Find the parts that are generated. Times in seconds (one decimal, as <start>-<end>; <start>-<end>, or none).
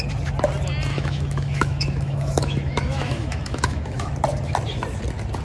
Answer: 0.9-4.1